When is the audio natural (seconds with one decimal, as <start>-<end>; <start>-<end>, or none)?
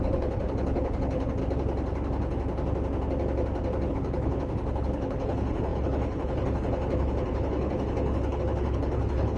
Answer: 1.4-3.9